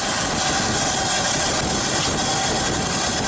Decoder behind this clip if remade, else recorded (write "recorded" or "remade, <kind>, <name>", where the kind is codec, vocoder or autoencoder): recorded